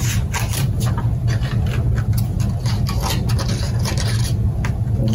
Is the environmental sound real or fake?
real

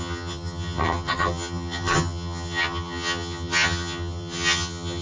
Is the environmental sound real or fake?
fake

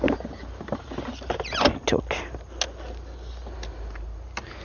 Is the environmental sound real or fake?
real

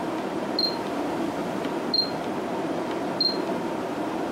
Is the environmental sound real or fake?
real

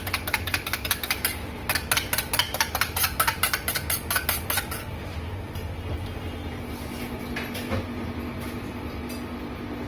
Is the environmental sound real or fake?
real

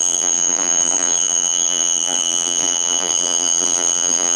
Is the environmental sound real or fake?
fake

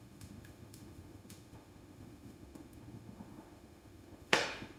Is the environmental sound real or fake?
fake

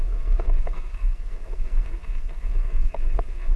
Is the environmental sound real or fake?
fake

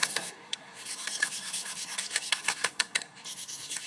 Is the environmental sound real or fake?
fake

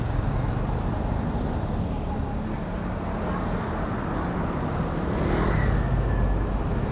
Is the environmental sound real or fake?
real